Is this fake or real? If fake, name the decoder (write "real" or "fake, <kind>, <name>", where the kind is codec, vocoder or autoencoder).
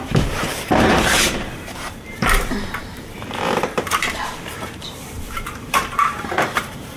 fake, vocoder, BigVGAN v2